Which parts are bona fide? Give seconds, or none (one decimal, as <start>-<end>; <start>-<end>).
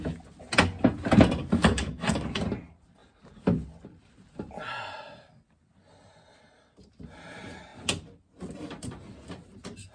0.0-1.4; 2.4-9.9